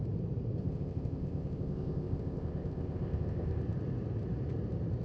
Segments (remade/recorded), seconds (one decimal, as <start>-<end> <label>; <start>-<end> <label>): 0.0-0.6 recorded; 0.6-3.6 remade; 3.6-5.0 recorded